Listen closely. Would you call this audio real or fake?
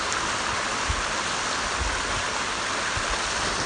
real